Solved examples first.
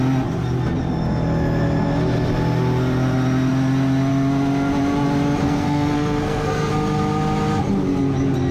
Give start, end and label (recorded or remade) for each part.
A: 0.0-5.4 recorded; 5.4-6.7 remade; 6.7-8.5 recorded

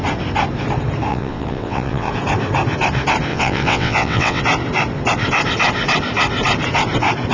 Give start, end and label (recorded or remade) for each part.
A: 0.0-1.1 recorded; 1.1-2.1 remade; 2.1-3.3 recorded; 3.3-4.4 remade; 4.4-7.3 recorded

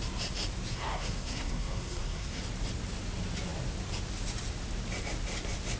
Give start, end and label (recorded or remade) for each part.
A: 0.0-0.7 recorded; 0.7-2.4 remade; 2.4-5.8 recorded

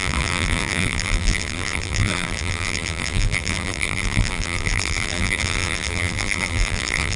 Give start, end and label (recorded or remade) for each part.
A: 0.0-7.2 remade

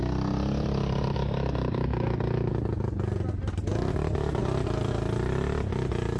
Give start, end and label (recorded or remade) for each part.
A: 0.0-6.2 recorded